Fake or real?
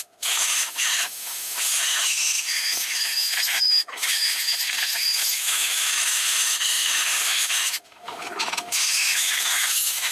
fake